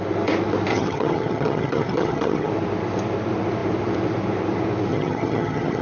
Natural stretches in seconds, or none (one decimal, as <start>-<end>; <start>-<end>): 0.0-0.7; 2.5-4.9